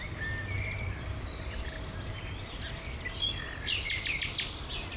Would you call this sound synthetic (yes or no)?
no